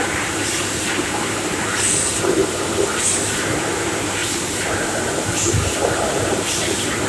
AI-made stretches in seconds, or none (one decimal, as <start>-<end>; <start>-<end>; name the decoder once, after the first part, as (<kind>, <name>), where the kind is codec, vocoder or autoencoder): 0.0-2.4 (vocoder, BigVGAN v2); 3.0-7.1